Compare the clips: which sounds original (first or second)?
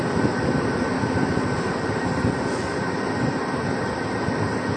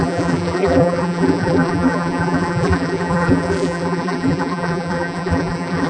first